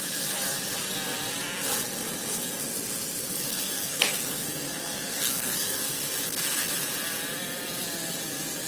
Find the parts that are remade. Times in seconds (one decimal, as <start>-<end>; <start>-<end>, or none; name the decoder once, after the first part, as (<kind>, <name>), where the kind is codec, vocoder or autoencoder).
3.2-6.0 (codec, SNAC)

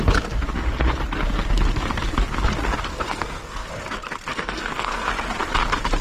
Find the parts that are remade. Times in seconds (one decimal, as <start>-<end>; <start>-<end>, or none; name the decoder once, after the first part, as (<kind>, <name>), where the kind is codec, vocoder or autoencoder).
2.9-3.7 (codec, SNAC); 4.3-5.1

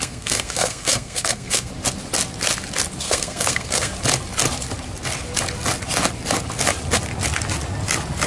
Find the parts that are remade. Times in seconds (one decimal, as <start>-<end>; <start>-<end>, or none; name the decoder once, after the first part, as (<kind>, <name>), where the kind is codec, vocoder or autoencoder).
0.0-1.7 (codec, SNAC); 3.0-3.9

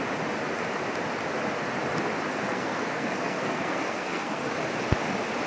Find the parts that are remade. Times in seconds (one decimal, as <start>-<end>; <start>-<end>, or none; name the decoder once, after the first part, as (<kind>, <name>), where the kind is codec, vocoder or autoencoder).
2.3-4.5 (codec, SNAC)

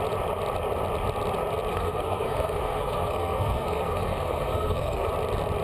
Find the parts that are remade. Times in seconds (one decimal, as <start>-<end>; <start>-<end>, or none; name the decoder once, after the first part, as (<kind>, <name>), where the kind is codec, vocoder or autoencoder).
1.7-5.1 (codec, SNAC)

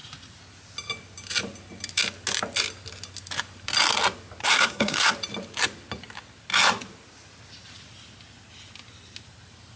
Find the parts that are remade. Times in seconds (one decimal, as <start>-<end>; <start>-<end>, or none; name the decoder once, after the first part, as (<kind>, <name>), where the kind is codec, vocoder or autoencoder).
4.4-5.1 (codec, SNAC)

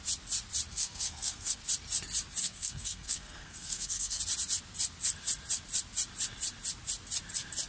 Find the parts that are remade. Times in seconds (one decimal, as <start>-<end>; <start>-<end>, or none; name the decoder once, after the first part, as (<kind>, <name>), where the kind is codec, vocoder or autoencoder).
0.7-1.6 (codec, SNAC); 2.4-4.2

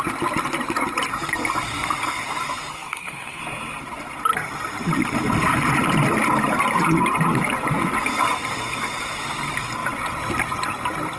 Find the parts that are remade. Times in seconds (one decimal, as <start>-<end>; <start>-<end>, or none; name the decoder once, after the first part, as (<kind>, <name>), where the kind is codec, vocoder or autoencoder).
2.7-3.4 (codec, SNAC)